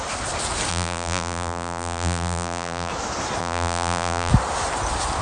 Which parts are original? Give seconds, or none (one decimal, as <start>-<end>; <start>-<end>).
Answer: 0.0-0.7; 2.9-3.4; 4.3-5.2